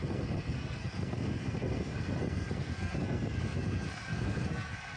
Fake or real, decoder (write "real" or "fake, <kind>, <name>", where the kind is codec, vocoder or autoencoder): fake, codec, SNAC